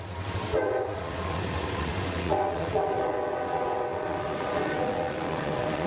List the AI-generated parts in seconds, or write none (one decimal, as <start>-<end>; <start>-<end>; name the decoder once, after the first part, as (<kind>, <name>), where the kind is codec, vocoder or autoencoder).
0.0-5.9 (vocoder, WaveNeXt)